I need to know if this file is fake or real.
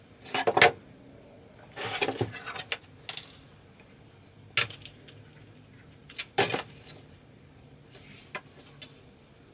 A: real